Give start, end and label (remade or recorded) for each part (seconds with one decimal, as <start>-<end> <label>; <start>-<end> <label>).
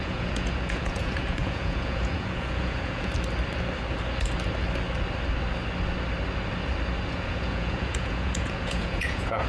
0.0-3.1 remade; 3.1-7.1 recorded; 7.1-9.5 remade